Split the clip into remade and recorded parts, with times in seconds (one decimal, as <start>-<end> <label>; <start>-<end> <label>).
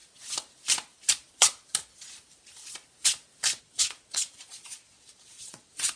0.0-3.6 recorded; 3.6-6.0 remade